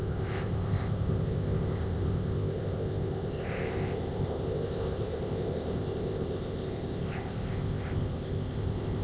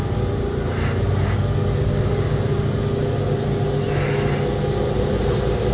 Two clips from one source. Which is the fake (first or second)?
first